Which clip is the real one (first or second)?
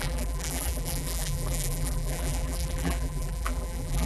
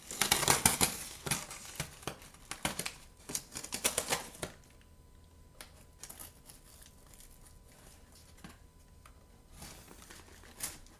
second